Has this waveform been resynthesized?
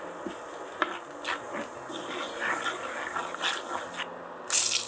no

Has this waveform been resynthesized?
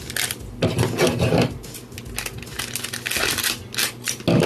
no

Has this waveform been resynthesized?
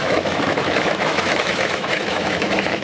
yes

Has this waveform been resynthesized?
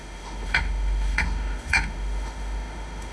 yes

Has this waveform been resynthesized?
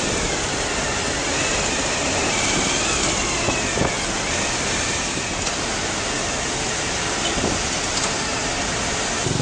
no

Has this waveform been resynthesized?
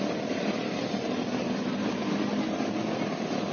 no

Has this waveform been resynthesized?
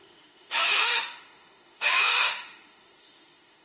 yes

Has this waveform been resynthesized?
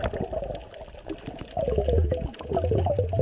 no